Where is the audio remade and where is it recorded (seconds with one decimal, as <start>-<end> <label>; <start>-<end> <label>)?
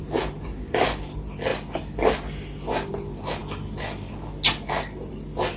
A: 0.0-5.6 recorded